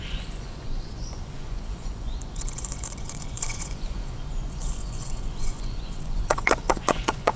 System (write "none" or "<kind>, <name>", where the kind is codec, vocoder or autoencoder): vocoder, Vocos